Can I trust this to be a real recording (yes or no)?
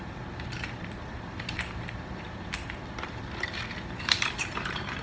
no